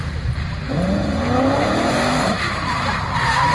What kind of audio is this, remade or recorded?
remade